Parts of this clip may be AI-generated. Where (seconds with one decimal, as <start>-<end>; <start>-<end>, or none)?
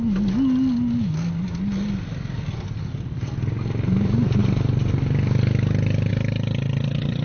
none